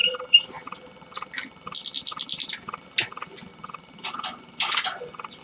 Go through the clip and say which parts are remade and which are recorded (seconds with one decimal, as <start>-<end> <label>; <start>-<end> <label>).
0.0-0.5 remade; 0.5-2.3 recorded; 2.3-2.8 remade; 2.8-3.5 recorded; 3.5-5.4 remade